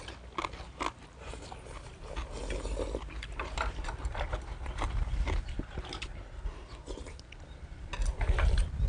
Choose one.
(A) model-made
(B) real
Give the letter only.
B